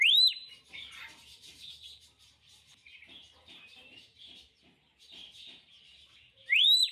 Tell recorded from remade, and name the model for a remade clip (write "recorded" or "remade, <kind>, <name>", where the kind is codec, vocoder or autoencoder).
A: remade, vocoder, BigVGAN v2